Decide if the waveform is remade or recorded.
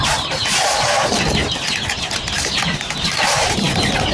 recorded